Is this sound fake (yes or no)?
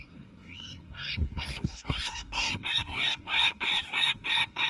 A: yes